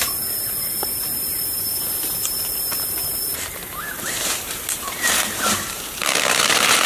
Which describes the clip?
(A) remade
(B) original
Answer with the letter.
A